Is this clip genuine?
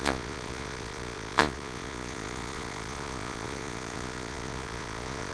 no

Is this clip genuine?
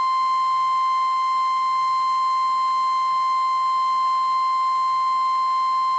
yes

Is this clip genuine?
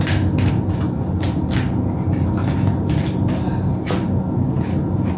yes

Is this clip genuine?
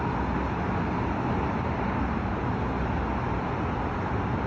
yes